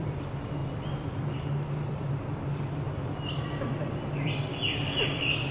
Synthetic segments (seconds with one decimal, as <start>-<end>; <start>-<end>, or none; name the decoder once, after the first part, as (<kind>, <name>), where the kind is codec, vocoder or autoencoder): 0.0-5.5 (vocoder, BigVGAN v2)